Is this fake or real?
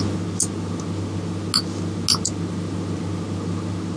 real